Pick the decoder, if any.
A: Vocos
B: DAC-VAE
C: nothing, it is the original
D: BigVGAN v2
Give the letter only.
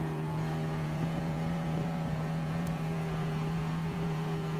A